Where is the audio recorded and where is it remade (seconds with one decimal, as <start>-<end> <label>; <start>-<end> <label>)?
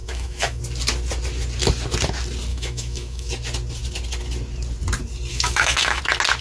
0.0-0.6 remade; 0.6-2.5 recorded; 2.5-3.3 remade; 3.3-5.3 recorded; 5.3-6.0 remade; 6.0-6.4 recorded